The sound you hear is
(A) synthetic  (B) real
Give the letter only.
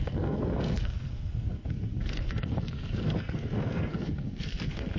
A